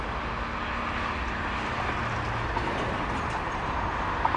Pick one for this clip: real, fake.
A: real